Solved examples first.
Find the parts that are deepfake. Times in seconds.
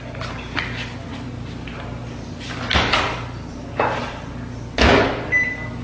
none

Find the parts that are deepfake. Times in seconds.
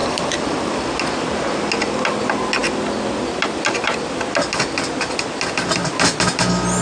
none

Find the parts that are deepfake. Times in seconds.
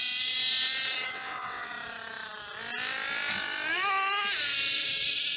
1.1-1.7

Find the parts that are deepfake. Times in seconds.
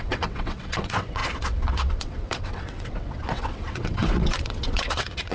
0.0-5.3